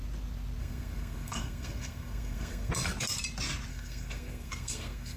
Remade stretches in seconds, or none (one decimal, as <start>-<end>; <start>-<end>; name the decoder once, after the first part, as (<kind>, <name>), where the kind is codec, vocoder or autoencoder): 0.6-2.7 (codec, SNAC); 3.7-5.2